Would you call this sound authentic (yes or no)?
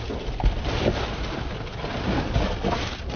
yes